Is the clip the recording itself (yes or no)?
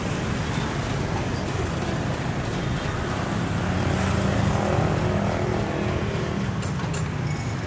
yes